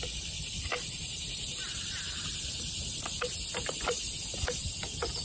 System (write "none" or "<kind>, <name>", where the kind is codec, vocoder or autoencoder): vocoder, BigVGAN v2